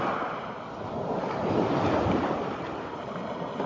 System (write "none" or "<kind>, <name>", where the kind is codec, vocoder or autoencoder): none